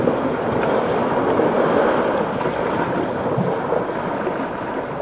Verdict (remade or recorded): recorded